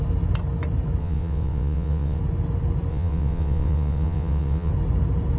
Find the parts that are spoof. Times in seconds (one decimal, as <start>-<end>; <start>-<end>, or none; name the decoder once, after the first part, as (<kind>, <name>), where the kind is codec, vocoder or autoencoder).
1.0-2.2 (vocoder, WaveNeXt); 2.9-4.7